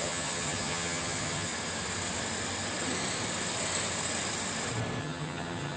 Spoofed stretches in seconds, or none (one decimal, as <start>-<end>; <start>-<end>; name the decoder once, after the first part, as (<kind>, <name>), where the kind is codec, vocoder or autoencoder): 0.0-1.5 (vocoder, HiFi-GAN); 5.0-5.8